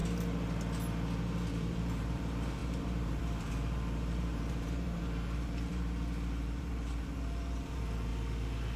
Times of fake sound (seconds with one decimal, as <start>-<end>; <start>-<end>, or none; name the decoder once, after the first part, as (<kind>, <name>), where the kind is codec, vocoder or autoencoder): 1.5-8.1 (vocoder, BigVGAN v2)